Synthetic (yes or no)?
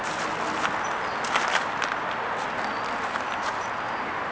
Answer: no